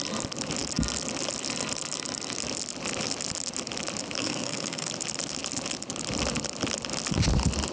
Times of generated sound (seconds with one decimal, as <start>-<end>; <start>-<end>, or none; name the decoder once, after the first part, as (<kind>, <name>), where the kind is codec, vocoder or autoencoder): 4.2-4.9 (codec, SNAC)